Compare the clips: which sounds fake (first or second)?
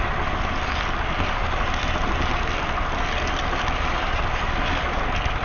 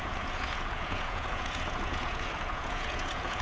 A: second